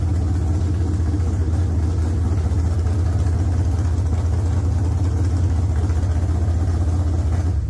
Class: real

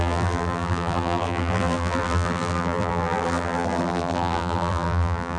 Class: fake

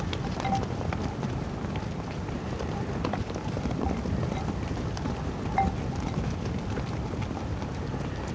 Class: real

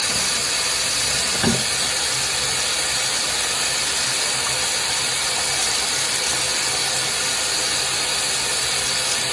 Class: real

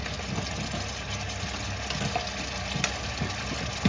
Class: real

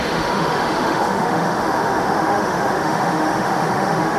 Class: fake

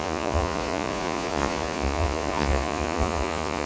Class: fake